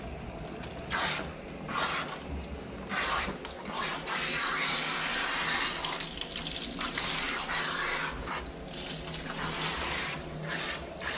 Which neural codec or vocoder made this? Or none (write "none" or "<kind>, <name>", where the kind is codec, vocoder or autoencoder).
none